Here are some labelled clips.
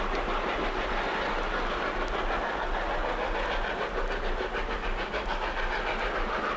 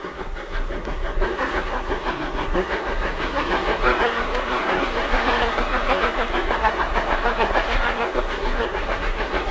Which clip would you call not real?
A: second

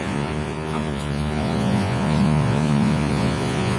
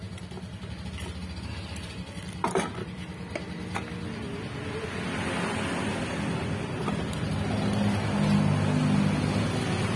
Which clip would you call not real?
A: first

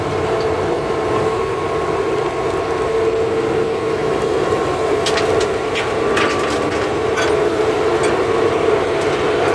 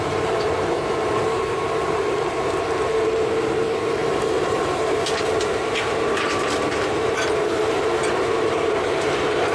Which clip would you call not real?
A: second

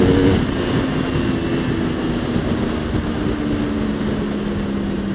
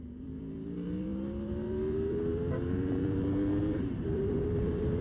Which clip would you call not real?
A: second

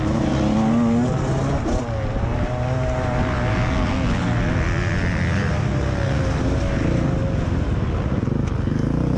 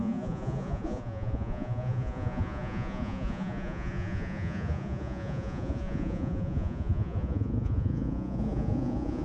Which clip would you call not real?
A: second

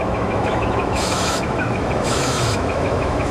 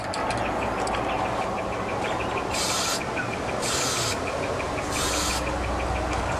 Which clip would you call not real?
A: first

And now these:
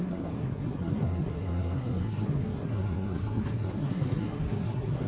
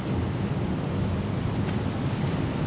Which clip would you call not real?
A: first